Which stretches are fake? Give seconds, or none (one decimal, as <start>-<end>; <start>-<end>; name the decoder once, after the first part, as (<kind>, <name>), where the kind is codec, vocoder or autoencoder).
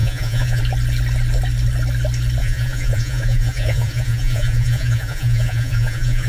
0.0-0.6 (vocoder, Vocos); 2.4-6.3